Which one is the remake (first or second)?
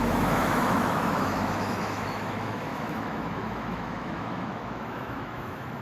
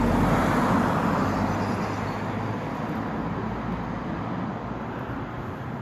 first